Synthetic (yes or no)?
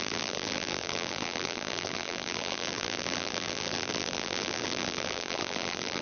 yes